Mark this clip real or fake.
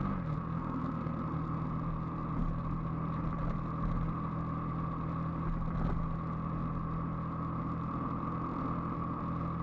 real